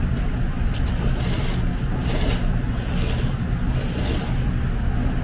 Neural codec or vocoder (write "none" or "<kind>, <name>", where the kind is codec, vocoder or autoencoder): none